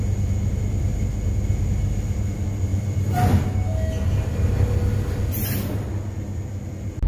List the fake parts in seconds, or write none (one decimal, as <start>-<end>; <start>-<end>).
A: none